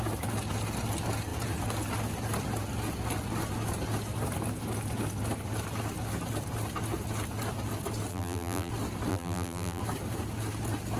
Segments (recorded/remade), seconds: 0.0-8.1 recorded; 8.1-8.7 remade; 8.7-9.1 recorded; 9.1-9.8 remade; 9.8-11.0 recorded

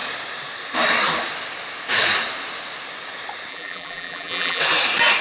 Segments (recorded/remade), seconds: 0.0-3.5 recorded; 3.5-4.6 remade; 4.6-5.2 recorded

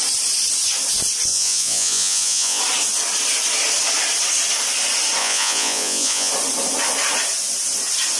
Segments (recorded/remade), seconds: 0.0-1.3 recorded; 1.3-2.6 remade; 2.6-5.2 recorded; 5.2-6.3 remade; 6.3-8.2 recorded